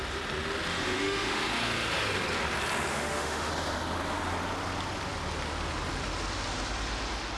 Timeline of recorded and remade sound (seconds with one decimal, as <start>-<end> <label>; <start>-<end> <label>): 0.0-0.7 recorded; 0.7-1.4 remade; 1.4-2.9 recorded; 2.9-3.5 remade; 3.5-7.4 recorded